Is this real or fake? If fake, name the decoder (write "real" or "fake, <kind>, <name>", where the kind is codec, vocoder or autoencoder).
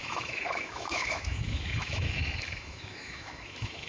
fake, autoencoder, DAC-VAE